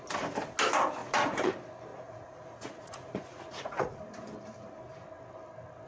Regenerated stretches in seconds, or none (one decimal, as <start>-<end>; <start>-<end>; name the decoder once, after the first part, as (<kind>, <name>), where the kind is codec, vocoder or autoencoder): 1.0-1.5 (vocoder, Vocos); 1.9-4.0